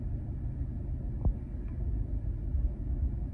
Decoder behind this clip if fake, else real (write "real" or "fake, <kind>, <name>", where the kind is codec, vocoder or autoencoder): real